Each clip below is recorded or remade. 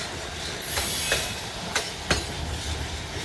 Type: recorded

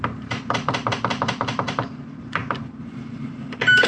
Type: remade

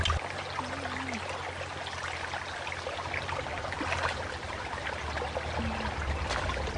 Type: recorded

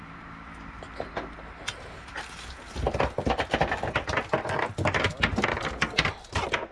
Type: recorded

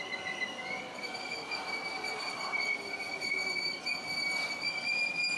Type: remade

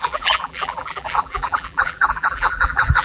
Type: remade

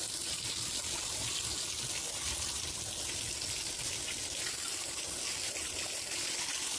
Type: recorded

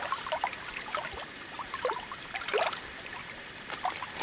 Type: remade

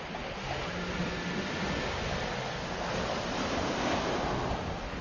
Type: recorded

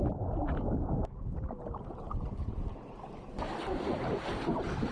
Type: recorded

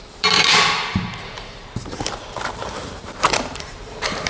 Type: remade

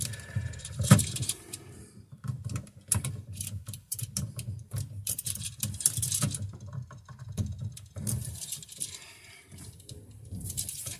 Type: remade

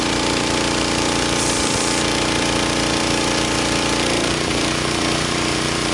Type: remade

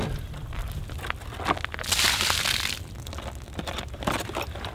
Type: recorded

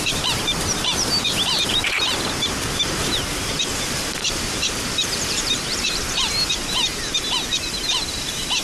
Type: remade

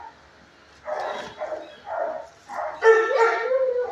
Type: recorded